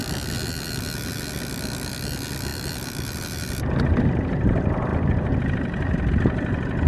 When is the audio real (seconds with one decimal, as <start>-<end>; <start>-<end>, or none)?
0.0-6.9